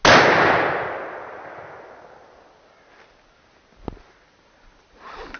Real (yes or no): yes